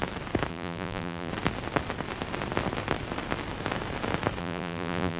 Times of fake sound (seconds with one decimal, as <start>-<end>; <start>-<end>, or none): 0.5-1.3; 4.4-5.2